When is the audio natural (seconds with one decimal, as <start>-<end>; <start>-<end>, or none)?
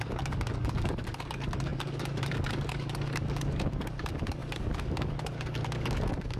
none